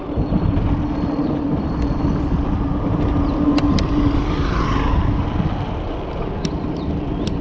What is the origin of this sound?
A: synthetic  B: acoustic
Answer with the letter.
B